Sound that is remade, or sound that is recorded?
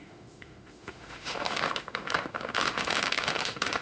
remade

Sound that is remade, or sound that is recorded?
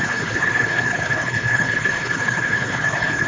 remade